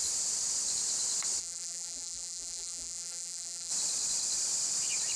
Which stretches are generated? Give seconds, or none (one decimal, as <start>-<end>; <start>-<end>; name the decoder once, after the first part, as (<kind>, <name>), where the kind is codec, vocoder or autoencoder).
1.4-3.7 (vocoder, BigVGAN v2)